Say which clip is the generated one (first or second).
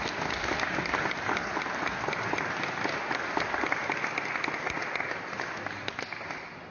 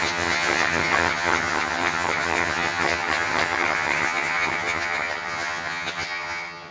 second